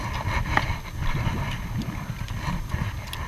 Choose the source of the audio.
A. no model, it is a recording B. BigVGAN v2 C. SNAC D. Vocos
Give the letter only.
A